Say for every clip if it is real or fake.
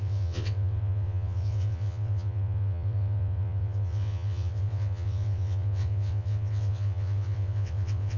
fake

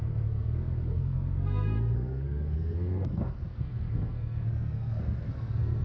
fake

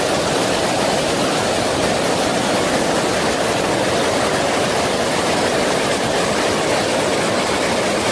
real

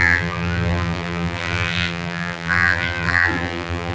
fake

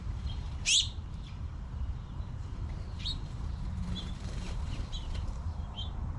fake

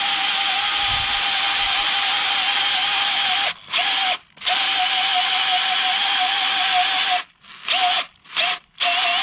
real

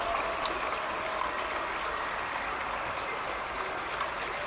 real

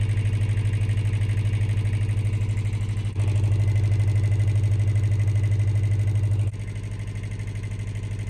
real